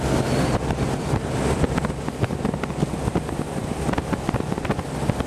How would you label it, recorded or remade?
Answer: recorded